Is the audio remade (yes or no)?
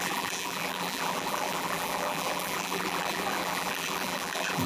yes